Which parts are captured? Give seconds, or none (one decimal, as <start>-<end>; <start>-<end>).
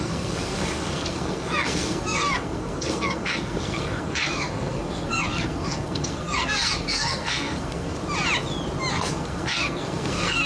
8.0-8.9